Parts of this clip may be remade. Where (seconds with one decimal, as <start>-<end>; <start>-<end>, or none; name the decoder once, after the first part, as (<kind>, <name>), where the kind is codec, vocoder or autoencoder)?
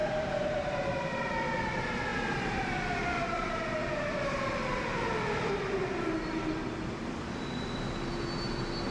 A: 0.0-1.0 (vocoder, BigVGAN v2); 2.1-2.7